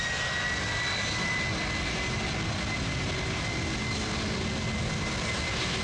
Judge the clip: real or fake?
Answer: real